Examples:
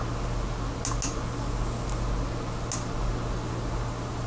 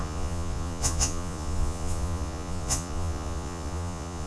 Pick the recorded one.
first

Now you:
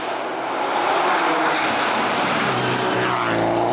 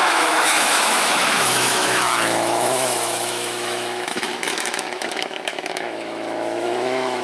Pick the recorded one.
first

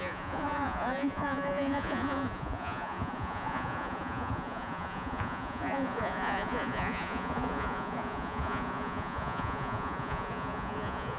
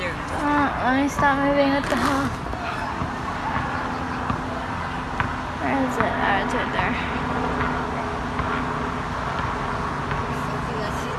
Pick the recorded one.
second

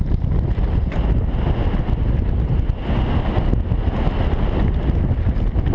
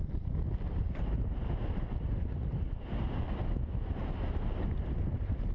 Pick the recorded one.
first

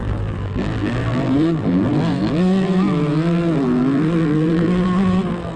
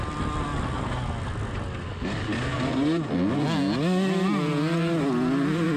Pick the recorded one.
second